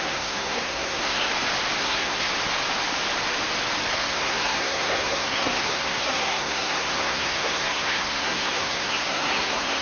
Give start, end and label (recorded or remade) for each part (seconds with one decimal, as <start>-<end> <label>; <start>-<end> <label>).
0.0-1.3 remade; 1.3-1.8 recorded; 1.8-2.3 remade; 2.3-3.9 recorded; 3.9-9.8 remade